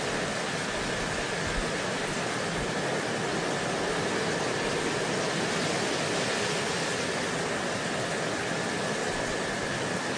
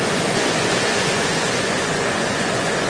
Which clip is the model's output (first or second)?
second